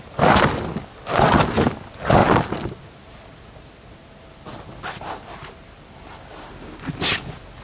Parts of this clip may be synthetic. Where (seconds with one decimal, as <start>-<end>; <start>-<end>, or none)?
none